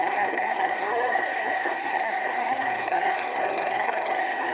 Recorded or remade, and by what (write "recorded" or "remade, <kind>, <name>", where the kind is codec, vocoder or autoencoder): remade, codec, SNAC